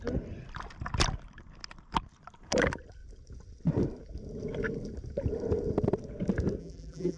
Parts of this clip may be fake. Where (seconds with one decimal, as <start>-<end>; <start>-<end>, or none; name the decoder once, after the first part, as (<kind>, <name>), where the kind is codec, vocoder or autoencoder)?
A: 6.6-7.2 (vocoder, BigVGAN v2)